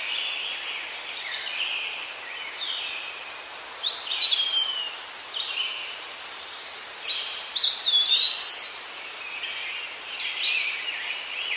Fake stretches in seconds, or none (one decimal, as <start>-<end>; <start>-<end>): 0.0-11.6